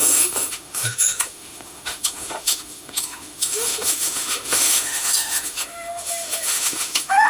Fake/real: fake